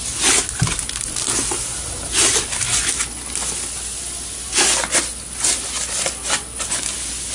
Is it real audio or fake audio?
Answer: real